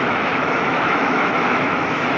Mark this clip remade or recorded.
remade